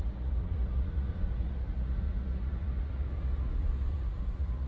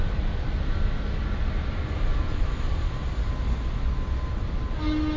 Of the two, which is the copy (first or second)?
first